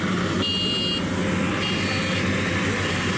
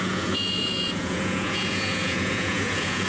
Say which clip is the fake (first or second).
second